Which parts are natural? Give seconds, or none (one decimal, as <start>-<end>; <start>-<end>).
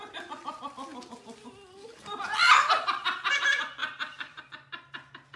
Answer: 0.0-3.8; 4.4-5.4